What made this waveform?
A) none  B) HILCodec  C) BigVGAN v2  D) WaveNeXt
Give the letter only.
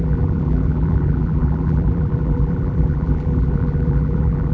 C